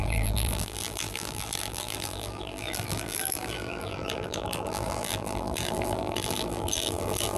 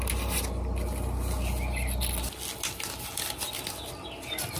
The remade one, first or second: first